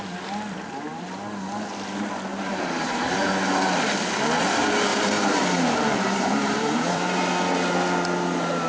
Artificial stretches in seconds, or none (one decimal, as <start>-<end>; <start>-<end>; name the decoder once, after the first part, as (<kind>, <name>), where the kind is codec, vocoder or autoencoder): 2.3-3.3 (vocoder, BigVGAN v2); 4.9-7.2